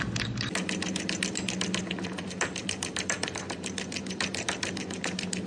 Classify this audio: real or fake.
real